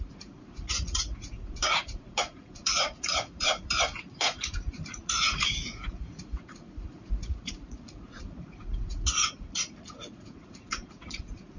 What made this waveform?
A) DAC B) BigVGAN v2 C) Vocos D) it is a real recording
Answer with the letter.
C